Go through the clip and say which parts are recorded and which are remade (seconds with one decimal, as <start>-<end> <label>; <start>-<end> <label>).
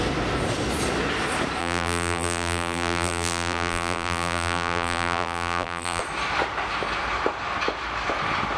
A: 0.0-1.6 recorded; 1.6-6.0 remade; 6.0-8.6 recorded